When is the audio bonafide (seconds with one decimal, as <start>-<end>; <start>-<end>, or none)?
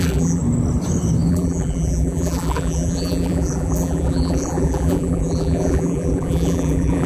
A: 0.4-1.3